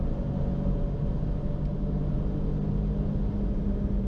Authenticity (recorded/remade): recorded